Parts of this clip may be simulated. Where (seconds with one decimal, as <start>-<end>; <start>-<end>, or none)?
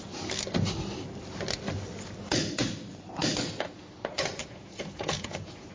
4.4-5.7